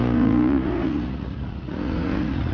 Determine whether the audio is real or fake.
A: fake